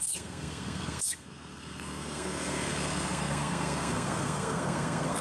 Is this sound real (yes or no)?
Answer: no